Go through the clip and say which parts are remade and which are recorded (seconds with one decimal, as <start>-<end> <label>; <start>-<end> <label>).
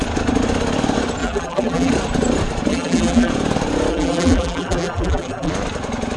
0.0-1.2 recorded; 1.2-1.9 remade; 1.9-2.7 recorded; 2.7-3.3 remade; 3.3-3.9 recorded; 3.9-5.5 remade; 5.5-6.2 recorded